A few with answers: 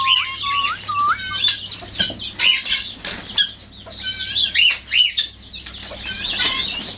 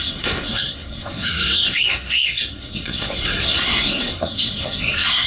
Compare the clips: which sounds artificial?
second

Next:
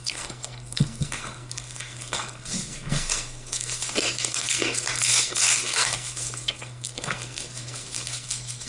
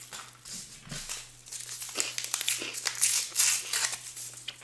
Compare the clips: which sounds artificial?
first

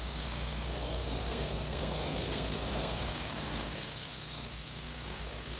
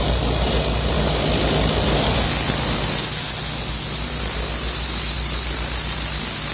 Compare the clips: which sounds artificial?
first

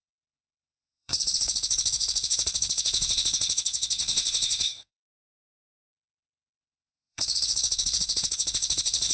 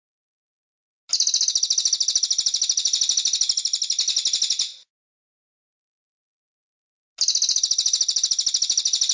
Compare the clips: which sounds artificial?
first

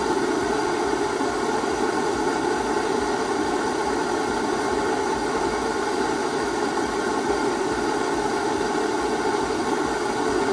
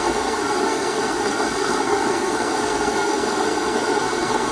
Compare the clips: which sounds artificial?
second